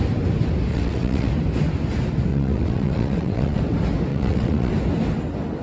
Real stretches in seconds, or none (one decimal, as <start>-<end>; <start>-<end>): 0.0-0.7; 1.3-2.3; 3.6-4.1; 4.7-5.6